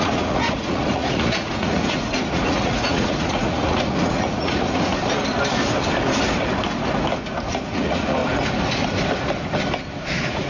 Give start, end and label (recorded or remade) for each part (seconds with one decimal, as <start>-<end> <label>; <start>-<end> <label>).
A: 0.0-4.9 remade; 4.9-7.5 recorded; 7.5-8.2 remade; 8.2-10.1 recorded; 10.1-10.5 remade